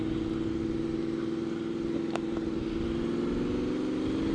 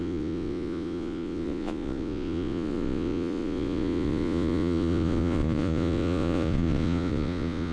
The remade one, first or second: second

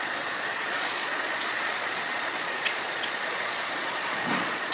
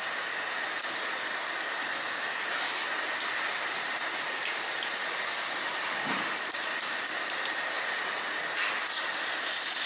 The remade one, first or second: first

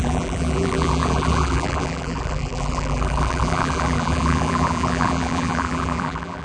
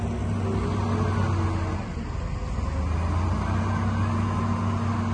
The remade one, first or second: first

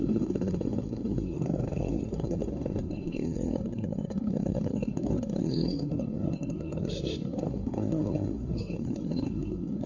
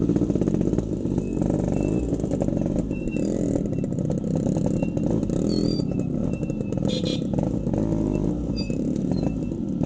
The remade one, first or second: first